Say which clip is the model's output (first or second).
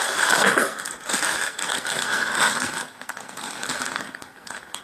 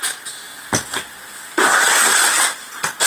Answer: first